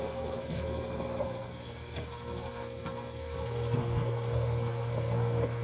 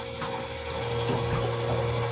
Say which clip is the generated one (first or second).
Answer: first